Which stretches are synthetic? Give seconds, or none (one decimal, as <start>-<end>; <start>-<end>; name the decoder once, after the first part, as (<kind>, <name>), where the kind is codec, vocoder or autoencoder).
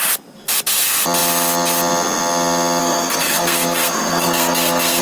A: 2.8-5.0 (codec, SNAC)